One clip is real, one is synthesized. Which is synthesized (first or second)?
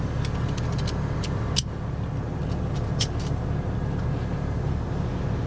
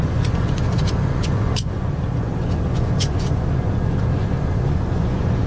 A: second